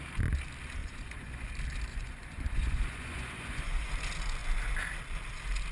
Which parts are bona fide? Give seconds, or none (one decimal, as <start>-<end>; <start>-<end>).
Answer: 0.0-0.8; 1.5-1.9; 3.9-5.7